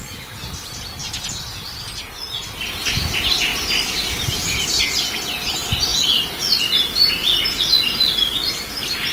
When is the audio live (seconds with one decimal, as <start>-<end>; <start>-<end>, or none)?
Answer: 0.0-3.5; 4.8-7.2; 7.8-9.1